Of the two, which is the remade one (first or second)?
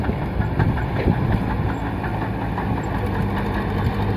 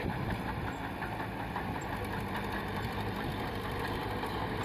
second